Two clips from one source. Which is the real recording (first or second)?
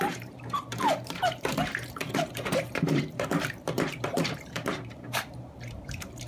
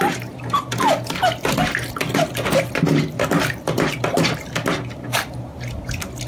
second